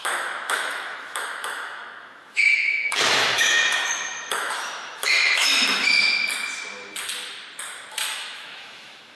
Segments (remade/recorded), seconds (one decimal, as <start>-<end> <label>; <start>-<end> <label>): 0.0-5.6 remade; 5.6-7.9 recorded; 7.9-9.2 remade